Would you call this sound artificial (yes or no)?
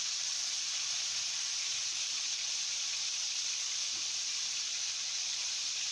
yes